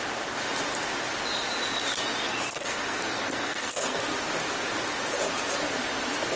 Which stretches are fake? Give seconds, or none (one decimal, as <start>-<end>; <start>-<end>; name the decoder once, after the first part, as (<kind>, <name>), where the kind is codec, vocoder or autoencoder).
2.2-4.0 (codec, SNAC)